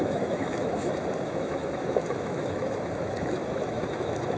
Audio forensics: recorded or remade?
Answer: remade